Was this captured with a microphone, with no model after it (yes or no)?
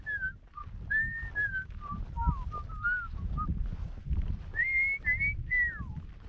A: yes